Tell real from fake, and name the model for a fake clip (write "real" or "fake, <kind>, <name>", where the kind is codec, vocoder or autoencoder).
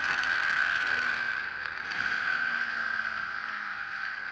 fake, codec, SNAC